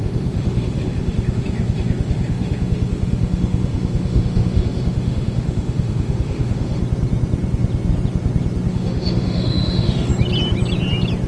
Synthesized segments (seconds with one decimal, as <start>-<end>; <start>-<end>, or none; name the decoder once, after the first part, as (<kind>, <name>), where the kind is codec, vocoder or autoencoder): 0.0-6.8 (autoencoder, DAC-VAE); 8.7-10.1